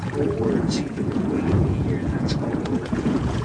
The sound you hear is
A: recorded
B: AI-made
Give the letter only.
B